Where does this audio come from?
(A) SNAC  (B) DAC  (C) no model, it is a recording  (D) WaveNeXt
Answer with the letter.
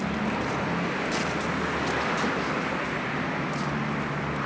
C